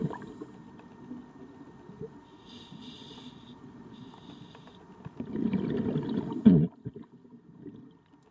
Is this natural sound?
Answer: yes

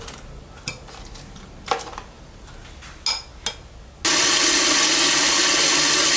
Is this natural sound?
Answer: yes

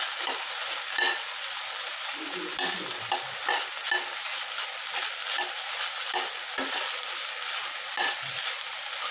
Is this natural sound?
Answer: yes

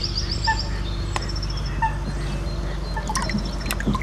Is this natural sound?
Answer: yes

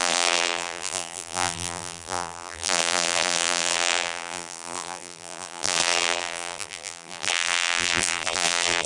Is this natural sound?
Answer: no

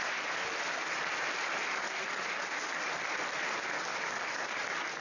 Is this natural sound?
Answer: yes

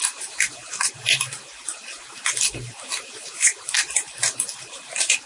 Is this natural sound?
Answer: no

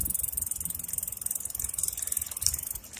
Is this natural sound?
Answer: yes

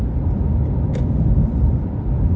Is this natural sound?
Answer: no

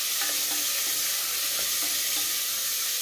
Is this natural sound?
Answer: yes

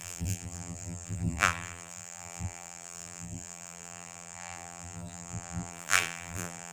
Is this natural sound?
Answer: no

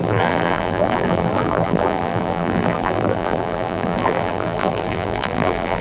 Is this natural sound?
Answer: no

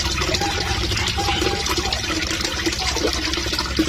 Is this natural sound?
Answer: yes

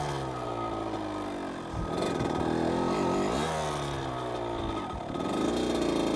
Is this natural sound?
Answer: yes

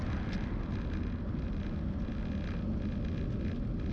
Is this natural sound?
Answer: yes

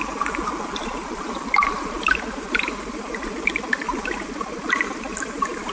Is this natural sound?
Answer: yes